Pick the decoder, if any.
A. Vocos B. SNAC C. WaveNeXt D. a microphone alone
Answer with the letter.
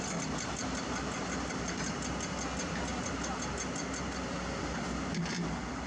D